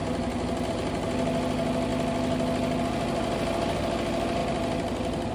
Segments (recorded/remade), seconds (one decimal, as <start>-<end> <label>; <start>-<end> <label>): 0.0-0.7 remade; 0.7-5.3 recorded